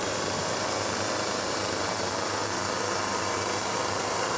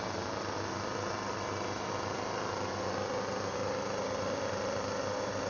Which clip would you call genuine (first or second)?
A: second